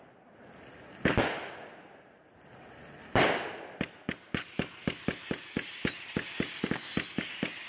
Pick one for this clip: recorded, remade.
recorded